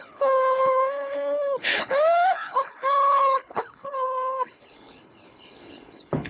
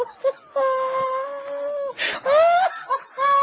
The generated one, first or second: first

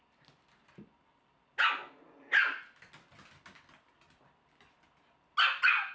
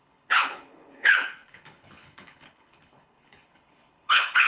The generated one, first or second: second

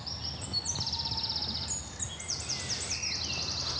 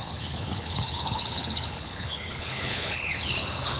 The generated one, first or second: second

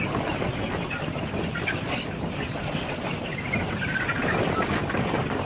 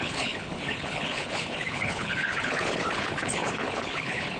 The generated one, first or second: second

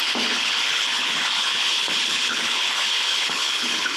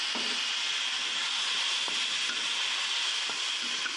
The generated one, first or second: first